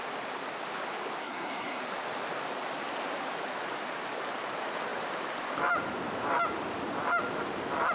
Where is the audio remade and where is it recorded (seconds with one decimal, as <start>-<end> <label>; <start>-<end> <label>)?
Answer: 0.0-1.2 recorded; 1.2-1.8 remade; 1.8-7.9 recorded